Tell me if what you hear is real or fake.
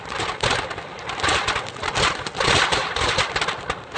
real